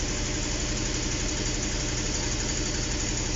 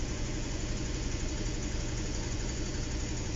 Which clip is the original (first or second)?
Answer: first